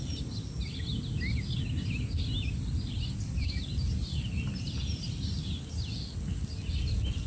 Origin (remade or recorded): recorded